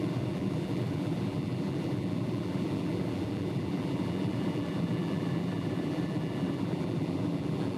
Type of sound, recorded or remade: remade